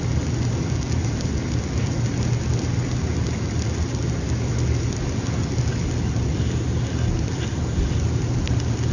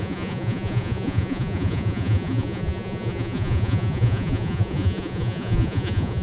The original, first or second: first